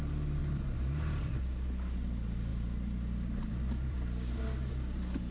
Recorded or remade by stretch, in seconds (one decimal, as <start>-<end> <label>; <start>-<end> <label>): 0.0-0.4 recorded; 0.4-1.4 remade; 1.4-2.5 recorded; 2.5-4.7 remade; 4.7-5.3 recorded